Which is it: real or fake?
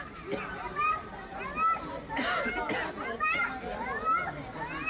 real